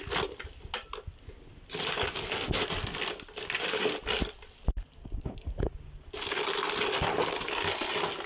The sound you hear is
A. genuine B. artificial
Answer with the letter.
A